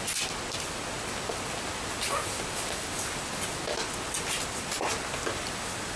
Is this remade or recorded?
recorded